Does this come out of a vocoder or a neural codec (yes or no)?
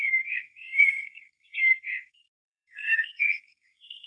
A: yes